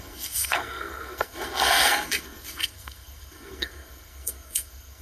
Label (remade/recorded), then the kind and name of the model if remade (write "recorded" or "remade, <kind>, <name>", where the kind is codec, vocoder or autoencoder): remade, codec, SNAC